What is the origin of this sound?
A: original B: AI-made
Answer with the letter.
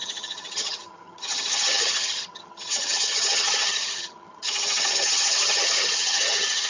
B